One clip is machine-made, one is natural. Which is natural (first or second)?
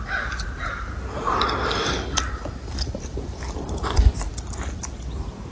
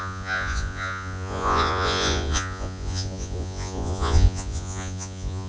first